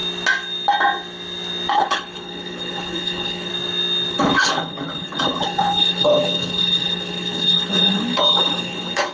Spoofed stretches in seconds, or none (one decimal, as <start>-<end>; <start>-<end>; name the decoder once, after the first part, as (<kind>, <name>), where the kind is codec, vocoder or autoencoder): 1.7-3.5 (codec, HILCodec); 4.1-9.1